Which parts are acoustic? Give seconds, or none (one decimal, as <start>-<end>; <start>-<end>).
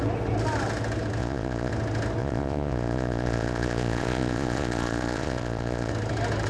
0.0-1.2; 1.7-2.2; 5.9-6.5